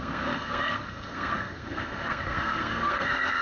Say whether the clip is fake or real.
fake